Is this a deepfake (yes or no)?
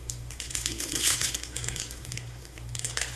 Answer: yes